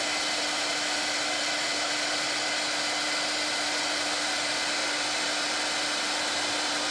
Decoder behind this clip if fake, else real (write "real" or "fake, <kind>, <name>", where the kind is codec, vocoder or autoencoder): real